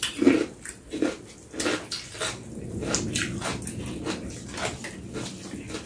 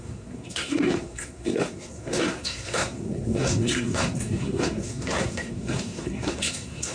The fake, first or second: second